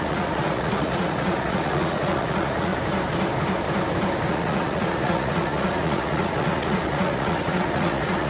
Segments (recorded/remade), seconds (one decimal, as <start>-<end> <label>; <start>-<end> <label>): 0.0-2.7 remade; 2.7-4.3 recorded; 4.3-8.3 remade